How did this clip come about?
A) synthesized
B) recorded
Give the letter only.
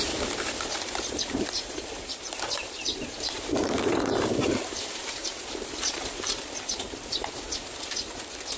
A